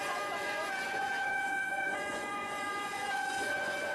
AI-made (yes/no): yes